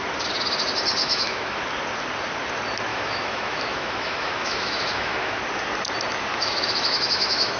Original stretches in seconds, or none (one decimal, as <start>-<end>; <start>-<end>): 0.0-1.0; 1.6-2.9; 5.4-6.3